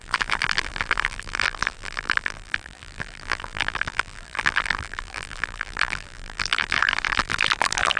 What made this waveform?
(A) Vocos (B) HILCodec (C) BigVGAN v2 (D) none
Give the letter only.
C